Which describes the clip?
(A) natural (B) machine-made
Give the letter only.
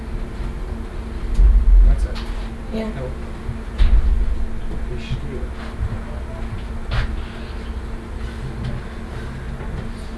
A